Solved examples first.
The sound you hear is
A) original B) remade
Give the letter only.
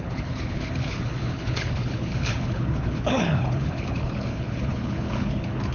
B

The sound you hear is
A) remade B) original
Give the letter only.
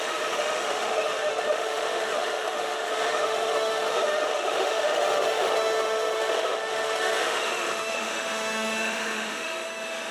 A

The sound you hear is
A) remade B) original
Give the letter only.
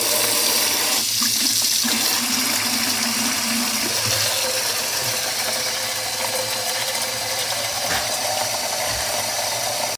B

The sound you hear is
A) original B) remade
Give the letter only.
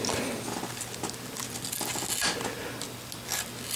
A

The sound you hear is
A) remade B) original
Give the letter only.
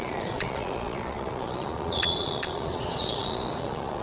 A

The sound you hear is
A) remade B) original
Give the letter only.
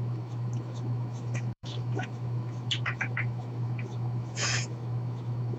A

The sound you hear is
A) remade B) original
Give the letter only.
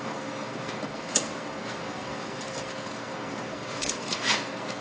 A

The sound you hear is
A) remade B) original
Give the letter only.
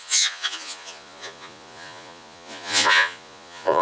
A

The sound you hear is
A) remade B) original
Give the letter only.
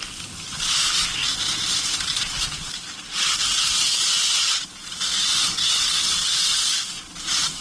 B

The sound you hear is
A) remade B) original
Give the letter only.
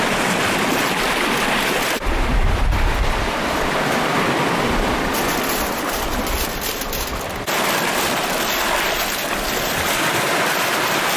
B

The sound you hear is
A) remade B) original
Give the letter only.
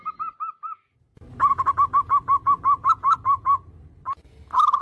B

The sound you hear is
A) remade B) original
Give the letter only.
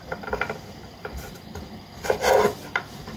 B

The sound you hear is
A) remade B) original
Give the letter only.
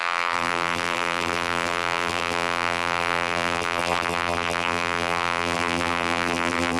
A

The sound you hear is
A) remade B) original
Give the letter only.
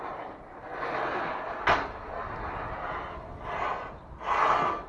B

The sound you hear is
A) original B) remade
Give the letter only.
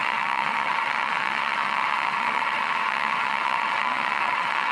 B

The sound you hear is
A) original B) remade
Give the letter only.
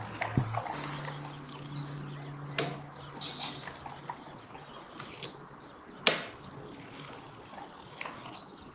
A